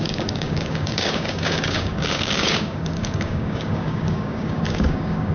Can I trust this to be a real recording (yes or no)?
no